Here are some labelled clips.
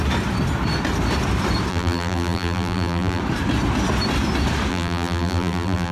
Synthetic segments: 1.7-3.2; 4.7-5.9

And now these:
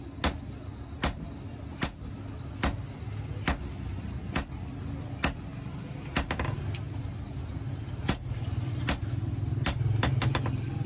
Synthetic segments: none

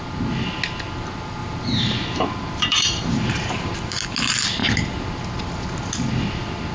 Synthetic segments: 1.4-3.7

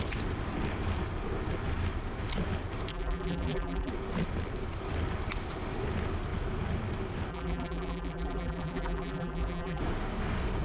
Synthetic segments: 2.9-3.9; 7.3-9.8

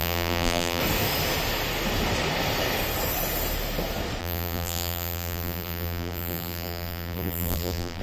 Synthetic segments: 0.0-0.8; 4.2-8.0

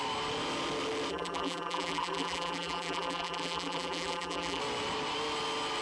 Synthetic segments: 1.1-4.6

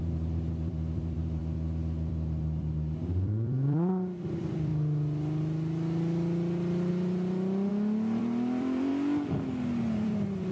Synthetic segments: 0.0-1.4; 2.1-4.7; 6.9-7.7; 8.2-8.9; 9.9-10.5

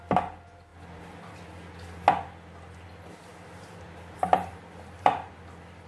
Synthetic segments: 3.3-5.3